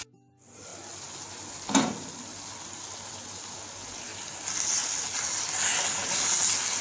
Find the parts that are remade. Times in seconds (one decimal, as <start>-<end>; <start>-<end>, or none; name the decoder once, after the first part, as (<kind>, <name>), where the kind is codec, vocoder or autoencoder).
none